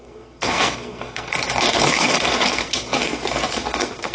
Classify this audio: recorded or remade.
remade